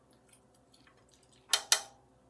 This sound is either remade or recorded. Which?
recorded